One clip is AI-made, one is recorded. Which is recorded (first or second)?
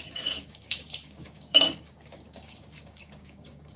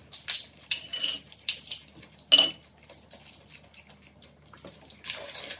second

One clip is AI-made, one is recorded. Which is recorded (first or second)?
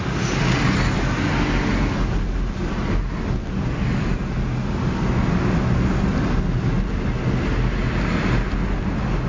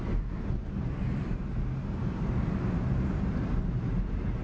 first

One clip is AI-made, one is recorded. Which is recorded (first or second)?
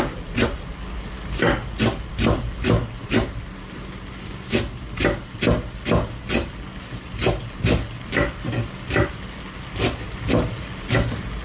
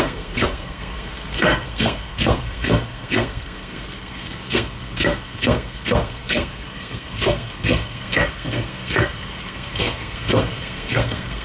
first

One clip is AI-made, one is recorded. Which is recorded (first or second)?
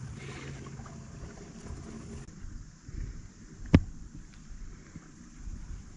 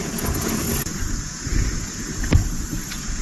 first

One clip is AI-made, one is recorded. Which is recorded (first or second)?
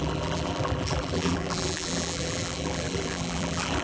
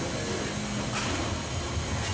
second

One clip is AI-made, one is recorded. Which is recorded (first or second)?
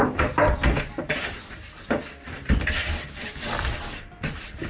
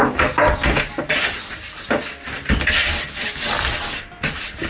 second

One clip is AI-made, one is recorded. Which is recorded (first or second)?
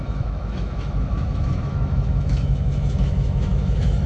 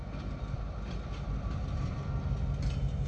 second